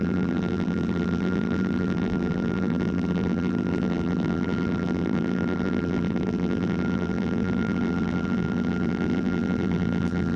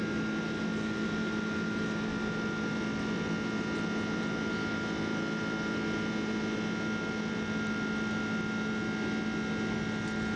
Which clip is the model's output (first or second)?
first